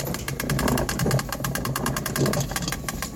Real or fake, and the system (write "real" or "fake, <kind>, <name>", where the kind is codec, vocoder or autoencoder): real